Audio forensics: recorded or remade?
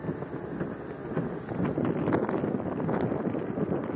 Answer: recorded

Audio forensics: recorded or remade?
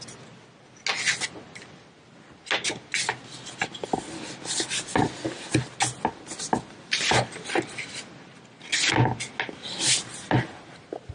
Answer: recorded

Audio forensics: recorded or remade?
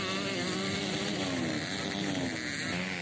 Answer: recorded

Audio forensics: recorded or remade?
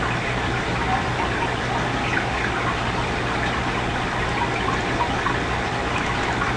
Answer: recorded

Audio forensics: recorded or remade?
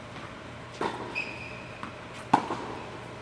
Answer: recorded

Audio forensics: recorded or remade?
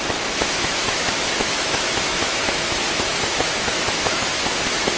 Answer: remade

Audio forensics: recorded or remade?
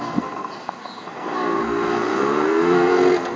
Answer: remade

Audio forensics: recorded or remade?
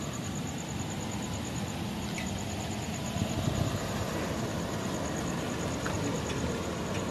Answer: recorded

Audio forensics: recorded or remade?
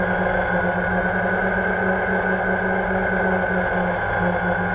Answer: recorded